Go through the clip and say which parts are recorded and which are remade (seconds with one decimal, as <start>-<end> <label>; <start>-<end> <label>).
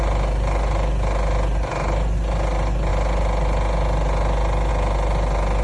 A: 0.0-5.6 recorded